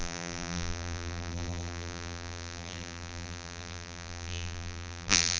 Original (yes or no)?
no